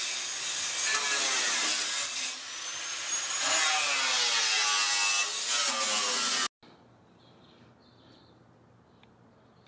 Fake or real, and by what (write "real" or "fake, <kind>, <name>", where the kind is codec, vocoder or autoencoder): real